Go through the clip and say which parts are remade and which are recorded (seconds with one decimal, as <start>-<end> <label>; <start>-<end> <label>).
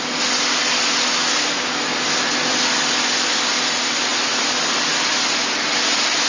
0.0-6.3 recorded